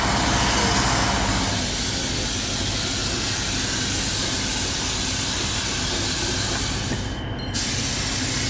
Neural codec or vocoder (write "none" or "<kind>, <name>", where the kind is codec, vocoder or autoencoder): none